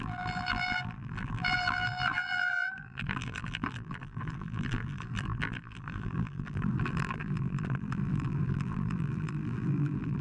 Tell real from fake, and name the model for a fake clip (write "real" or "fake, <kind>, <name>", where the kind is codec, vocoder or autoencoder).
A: fake, vocoder, BigVGAN v2